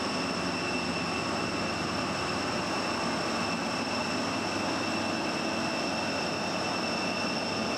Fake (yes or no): no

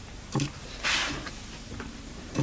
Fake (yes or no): yes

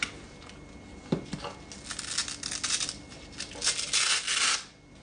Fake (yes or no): no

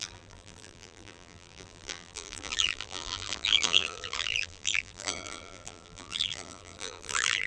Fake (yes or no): yes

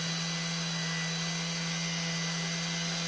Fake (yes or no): no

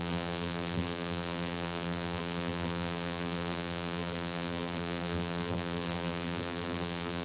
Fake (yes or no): yes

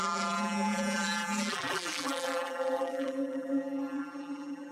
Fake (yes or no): yes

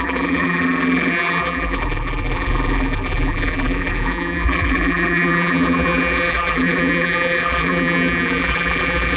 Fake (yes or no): yes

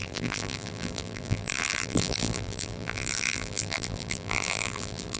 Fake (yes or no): yes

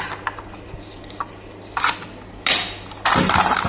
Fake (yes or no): no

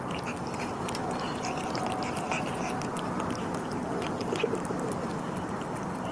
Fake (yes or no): no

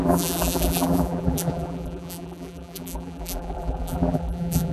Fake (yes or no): yes